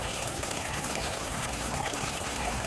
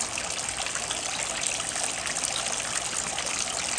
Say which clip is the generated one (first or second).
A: first